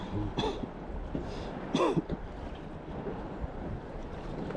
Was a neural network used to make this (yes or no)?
yes